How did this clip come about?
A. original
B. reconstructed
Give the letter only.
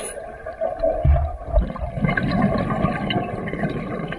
A